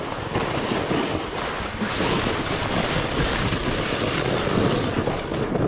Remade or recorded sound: recorded